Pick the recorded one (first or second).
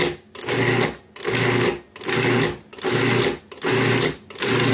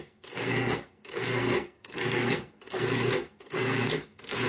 first